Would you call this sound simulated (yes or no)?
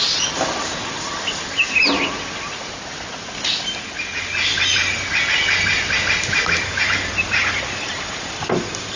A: no